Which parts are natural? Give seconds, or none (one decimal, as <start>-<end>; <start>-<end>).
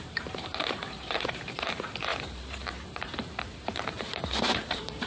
none